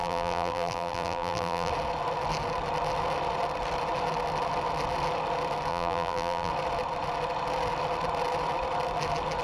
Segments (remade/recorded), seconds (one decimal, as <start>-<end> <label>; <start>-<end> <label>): 0.0-1.7 remade; 1.7-5.7 recorded; 5.7-6.5 remade; 6.5-9.4 recorded